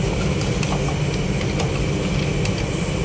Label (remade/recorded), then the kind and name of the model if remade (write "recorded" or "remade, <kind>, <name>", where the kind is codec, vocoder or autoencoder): recorded